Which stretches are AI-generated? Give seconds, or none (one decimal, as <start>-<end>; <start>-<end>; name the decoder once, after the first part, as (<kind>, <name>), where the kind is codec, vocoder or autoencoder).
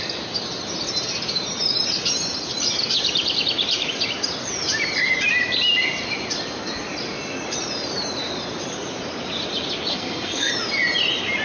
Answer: 9.9-10.5 (codec, SNAC)